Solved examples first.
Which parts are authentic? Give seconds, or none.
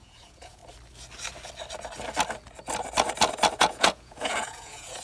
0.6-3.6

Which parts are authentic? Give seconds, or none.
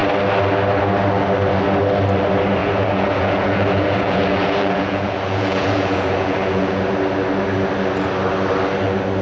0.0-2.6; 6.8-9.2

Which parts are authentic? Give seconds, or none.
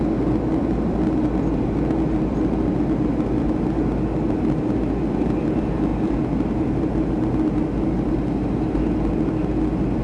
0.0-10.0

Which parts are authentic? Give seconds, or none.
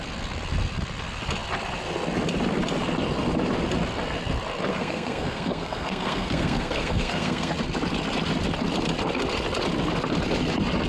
0.0-4.7; 7.5-10.9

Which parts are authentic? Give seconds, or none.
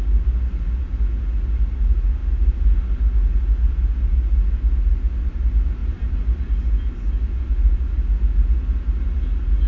0.0-9.7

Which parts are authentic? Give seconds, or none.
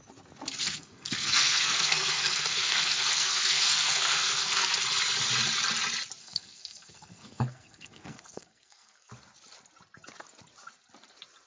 0.0-0.6; 4.7-6.2; 9.1-11.5